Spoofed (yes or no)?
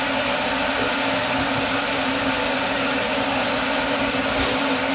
no